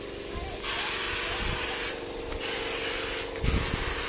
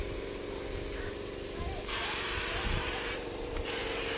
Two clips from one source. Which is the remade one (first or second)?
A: second